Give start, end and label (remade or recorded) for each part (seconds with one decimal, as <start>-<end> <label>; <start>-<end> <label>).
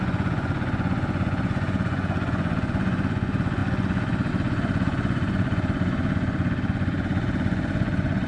0.0-8.3 remade